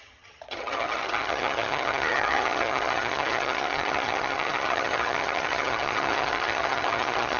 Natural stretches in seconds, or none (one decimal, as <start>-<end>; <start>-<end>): none